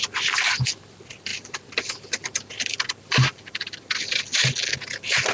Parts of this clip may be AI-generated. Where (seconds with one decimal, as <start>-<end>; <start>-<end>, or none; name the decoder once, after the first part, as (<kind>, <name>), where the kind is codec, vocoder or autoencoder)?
none